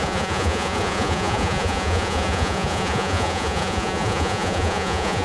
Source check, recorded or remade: remade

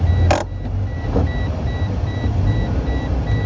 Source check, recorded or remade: recorded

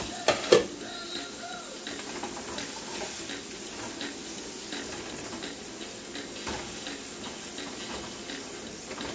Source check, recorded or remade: recorded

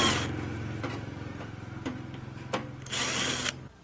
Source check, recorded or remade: recorded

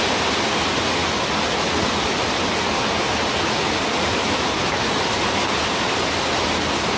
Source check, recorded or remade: recorded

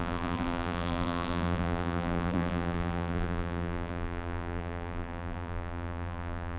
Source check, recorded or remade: remade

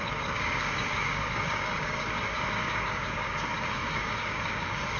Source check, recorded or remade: remade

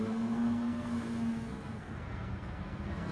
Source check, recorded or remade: remade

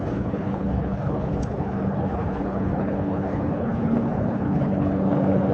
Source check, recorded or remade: remade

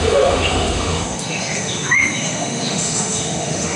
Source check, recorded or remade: remade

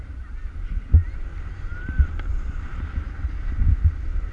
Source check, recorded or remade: recorded